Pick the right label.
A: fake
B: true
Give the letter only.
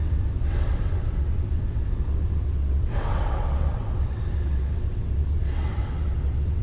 A